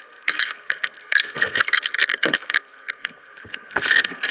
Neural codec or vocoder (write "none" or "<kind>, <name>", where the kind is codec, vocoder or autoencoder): codec, SNAC